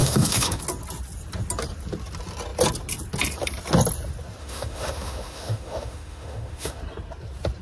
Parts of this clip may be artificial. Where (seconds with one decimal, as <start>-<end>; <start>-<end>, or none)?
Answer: 0.0-0.6; 4.4-6.8